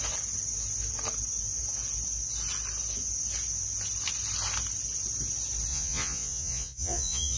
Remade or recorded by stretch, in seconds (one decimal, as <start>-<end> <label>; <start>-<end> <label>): 0.0-5.7 recorded; 5.7-7.4 remade

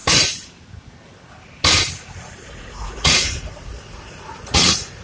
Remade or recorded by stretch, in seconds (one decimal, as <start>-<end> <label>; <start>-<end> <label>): 0.0-2.2 recorded; 2.2-5.0 remade

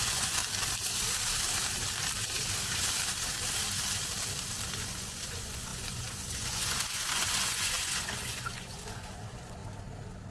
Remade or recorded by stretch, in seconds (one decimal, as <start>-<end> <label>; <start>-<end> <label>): 0.0-0.4 remade; 0.4-4.7 recorded; 4.7-9.6 remade; 9.6-10.3 recorded

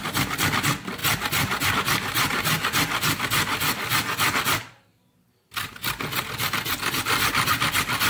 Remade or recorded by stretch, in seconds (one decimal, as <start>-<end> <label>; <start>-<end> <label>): 0.0-8.1 recorded

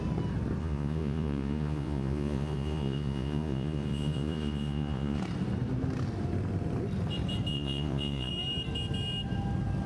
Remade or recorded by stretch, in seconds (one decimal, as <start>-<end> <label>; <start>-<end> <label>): 0.0-0.6 recorded; 0.6-5.2 remade; 5.2-7.5 recorded; 7.5-8.3 remade; 8.3-9.9 recorded

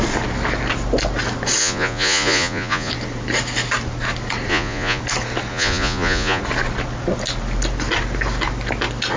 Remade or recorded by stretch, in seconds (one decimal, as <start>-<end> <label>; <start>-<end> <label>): 0.0-1.6 recorded; 1.6-2.9 remade; 2.9-4.5 recorded; 4.5-5.0 remade; 5.0-5.5 recorded; 5.5-6.4 remade; 6.4-9.2 recorded

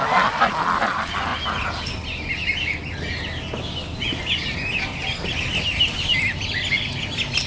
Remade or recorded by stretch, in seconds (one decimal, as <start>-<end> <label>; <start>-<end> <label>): 0.0-7.5 recorded